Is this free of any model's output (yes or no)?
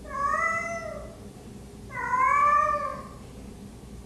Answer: yes